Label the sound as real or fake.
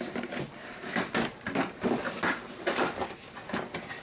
fake